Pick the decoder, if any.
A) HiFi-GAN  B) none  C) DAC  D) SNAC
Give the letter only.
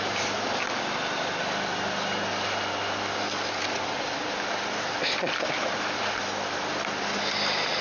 B